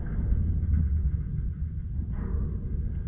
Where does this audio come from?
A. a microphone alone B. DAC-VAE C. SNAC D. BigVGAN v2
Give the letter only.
A